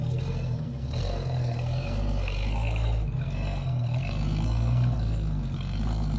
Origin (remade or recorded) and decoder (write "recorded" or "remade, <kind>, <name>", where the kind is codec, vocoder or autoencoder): remade, codec, SNAC